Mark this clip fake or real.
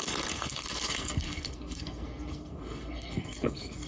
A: fake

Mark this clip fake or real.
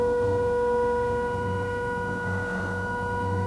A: fake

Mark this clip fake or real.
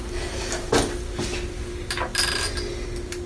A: real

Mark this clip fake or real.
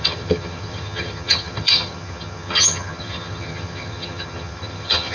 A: fake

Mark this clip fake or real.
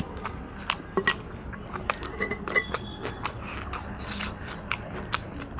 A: real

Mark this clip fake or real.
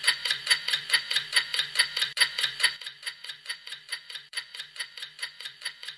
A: fake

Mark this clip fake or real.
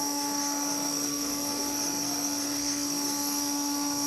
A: fake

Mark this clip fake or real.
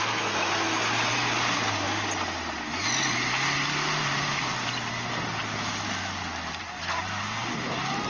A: real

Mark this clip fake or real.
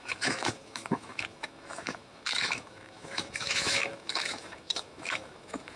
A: fake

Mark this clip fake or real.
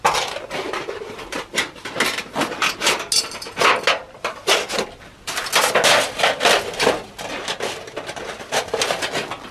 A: real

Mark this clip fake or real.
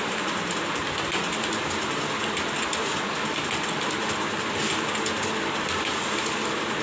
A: real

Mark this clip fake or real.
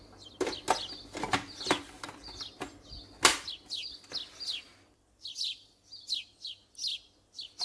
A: real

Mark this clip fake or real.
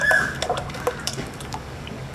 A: fake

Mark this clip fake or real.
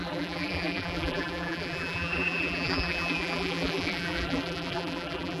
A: fake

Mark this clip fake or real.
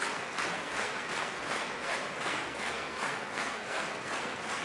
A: fake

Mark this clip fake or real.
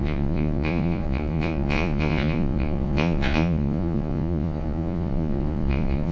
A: fake